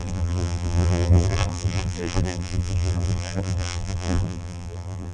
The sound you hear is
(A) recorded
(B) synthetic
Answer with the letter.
B